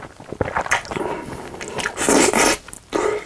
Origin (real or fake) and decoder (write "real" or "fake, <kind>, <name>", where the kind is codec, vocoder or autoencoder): real